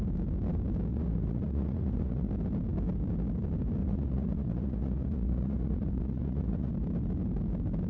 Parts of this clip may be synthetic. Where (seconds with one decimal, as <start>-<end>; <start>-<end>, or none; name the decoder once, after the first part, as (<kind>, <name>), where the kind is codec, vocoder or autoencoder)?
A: 0.9-2.3 (vocoder, Vocos); 3.8-6.7